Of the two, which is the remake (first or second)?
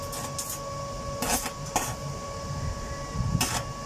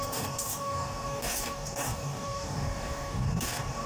second